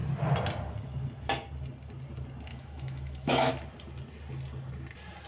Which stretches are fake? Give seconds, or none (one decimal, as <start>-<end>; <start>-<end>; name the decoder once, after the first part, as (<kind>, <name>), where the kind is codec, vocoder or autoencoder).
2.5-3.5 (autoencoder, DAC-VAE)